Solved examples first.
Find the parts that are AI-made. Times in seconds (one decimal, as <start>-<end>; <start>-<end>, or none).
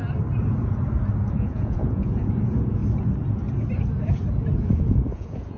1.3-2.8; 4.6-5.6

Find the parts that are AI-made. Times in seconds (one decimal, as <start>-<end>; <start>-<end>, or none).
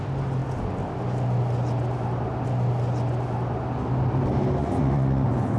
4.6-5.6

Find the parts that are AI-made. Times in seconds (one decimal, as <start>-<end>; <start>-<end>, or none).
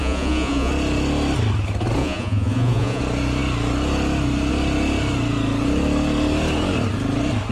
0.0-0.7; 2.0-3.0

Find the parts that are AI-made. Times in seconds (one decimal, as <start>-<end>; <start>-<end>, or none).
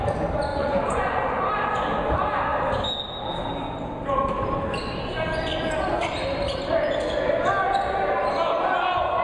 0.5-1.5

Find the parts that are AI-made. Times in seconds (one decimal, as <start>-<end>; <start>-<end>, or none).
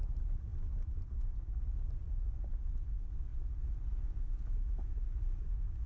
none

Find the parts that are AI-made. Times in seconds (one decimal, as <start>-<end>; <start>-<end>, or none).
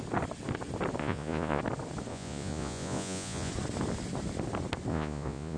1.0-1.6; 2.1-3.5; 4.9-5.6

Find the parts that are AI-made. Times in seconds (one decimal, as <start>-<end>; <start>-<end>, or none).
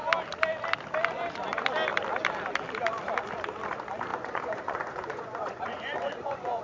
4.1-6.6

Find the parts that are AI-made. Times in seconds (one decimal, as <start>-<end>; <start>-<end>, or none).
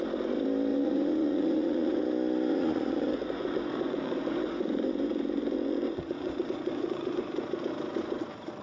0.7-2.0; 2.5-7.6